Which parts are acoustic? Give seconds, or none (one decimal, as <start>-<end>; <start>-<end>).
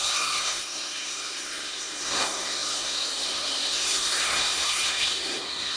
none